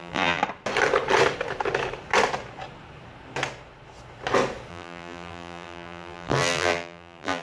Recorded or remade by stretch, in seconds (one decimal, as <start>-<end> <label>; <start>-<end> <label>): 0.0-0.4 remade; 0.4-4.7 recorded; 4.7-7.4 remade